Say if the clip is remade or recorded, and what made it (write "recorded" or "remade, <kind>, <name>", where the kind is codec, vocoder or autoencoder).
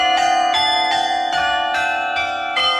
remade, vocoder, BigVGAN v2